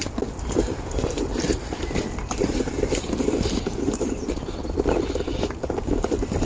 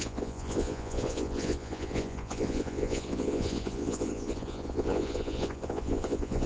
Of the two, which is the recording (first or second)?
first